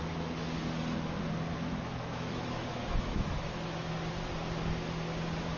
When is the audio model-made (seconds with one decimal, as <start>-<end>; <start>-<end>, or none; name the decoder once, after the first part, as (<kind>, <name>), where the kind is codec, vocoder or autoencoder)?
1.5-4.0 (autoencoder, DAC-VAE)